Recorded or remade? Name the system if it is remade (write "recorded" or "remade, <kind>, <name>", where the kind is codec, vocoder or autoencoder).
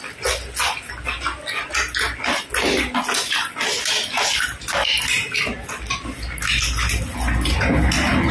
recorded